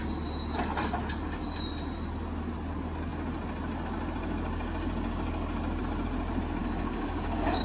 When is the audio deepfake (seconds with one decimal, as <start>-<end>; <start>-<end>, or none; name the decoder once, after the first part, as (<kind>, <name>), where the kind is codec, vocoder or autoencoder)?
6.6-7.6 (codec, DAC)